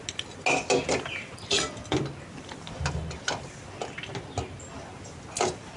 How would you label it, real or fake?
real